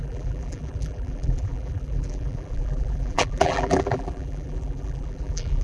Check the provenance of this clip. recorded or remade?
remade